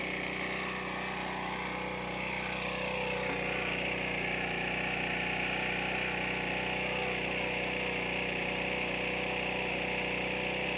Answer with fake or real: real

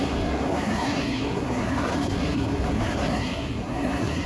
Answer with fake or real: fake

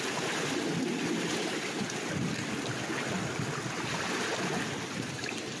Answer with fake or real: real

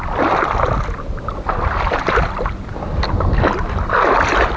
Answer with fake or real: real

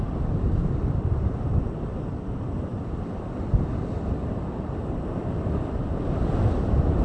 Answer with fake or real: real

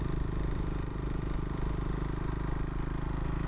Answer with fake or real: real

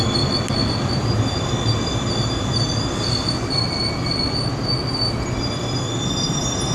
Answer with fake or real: real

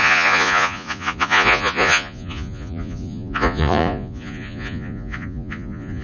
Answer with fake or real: fake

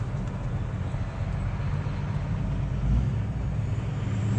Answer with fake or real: real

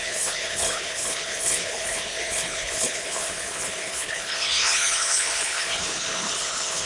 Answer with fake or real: fake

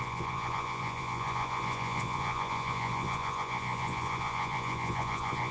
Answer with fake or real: fake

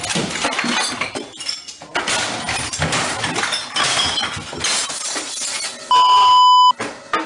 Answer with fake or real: real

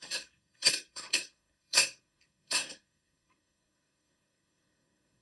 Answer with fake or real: fake